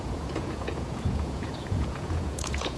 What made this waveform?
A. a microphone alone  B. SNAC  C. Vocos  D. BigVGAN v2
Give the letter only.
C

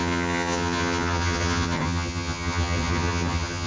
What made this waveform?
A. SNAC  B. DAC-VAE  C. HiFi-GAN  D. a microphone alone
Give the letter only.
C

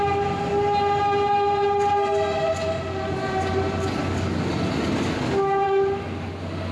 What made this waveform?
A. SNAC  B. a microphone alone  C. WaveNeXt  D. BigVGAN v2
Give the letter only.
B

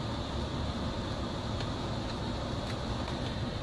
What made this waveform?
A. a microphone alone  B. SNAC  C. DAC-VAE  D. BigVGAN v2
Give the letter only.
A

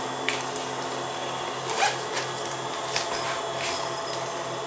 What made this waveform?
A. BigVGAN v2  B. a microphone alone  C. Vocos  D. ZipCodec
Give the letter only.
A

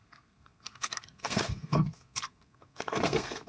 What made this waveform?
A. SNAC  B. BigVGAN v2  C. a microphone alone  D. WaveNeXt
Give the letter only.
A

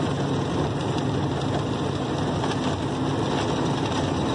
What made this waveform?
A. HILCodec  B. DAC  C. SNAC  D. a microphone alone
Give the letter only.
D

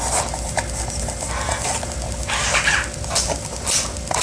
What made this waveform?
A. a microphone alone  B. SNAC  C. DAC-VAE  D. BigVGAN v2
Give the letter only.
A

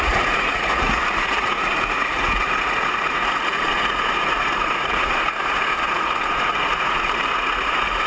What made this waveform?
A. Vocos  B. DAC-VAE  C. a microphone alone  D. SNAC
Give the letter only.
A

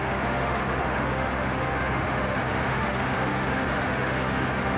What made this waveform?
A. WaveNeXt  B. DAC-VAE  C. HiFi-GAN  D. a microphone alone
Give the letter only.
B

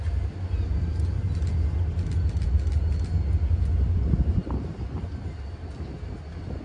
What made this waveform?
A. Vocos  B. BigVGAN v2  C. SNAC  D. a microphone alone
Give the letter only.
D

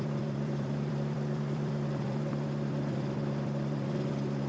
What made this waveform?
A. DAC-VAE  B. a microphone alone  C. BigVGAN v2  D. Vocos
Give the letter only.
C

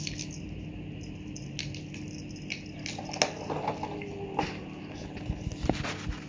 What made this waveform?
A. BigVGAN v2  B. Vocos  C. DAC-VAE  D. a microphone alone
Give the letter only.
D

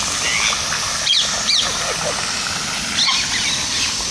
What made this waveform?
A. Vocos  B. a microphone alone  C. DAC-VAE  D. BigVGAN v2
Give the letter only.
B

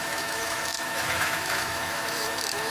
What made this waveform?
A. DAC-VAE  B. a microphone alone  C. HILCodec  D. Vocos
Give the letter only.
A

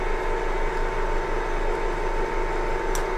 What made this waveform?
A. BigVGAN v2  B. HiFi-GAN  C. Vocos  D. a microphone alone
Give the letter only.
D